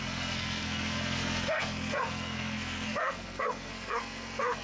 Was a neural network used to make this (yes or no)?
yes